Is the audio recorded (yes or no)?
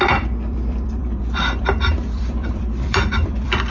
no